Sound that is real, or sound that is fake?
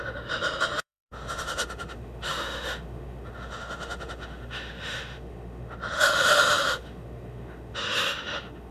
fake